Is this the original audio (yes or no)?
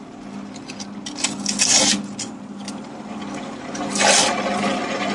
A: yes